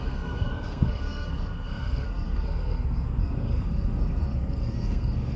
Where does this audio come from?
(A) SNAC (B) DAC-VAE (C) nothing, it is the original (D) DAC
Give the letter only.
A